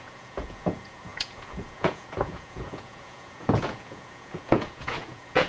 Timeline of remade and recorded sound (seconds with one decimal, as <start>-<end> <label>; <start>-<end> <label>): 0.0-5.5 remade